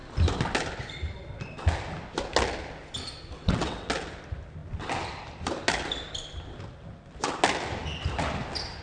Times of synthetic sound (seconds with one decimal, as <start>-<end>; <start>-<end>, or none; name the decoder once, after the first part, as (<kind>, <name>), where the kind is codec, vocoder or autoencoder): 3.4-3.9 (vocoder, WaveNeXt)